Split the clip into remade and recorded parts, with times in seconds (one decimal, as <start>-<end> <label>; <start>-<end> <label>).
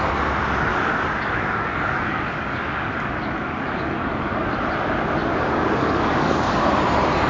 0.0-0.7 recorded; 0.7-4.5 remade; 4.5-5.2 recorded; 5.2-6.6 remade; 6.6-7.3 recorded